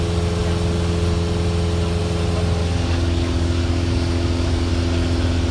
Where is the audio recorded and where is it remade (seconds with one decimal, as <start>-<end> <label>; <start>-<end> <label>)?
0.0-2.6 recorded; 2.6-4.7 remade; 4.7-5.5 recorded